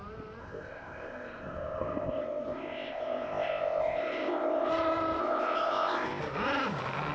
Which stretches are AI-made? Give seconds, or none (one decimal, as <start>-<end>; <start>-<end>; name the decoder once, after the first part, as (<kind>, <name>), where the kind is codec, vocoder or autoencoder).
0.4-4.7 (codec, ZipCodec); 5.2-6.2